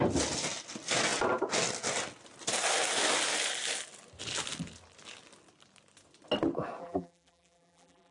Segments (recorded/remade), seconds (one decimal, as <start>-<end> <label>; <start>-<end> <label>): 0.0-6.8 recorded; 6.8-8.1 remade